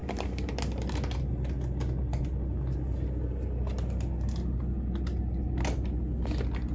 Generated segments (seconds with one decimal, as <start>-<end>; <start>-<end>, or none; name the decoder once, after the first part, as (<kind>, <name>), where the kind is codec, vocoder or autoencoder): 0.0-0.6 (vocoder, BigVGAN v2)